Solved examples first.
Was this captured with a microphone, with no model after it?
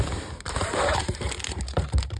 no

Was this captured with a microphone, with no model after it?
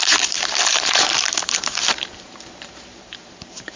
no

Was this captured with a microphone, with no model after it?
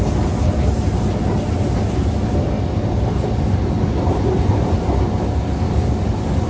yes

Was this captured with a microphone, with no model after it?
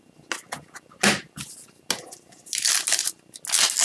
yes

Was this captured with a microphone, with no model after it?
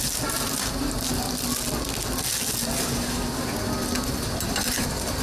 yes